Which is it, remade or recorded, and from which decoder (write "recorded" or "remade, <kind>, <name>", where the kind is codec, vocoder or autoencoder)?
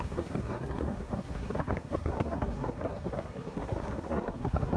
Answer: remade, codec, SNAC